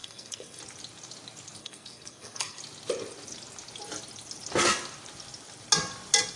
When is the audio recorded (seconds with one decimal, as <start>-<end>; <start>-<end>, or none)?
0.6-1.6; 2.6-6.4